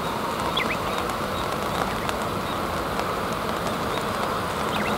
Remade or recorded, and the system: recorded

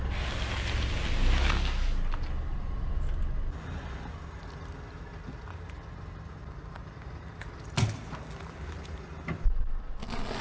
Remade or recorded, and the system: recorded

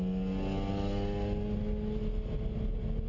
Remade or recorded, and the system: recorded